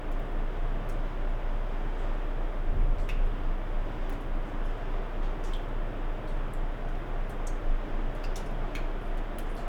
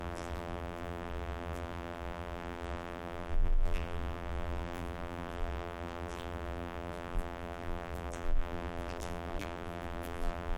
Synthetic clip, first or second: second